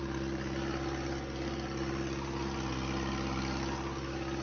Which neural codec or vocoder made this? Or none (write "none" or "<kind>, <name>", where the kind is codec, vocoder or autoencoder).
none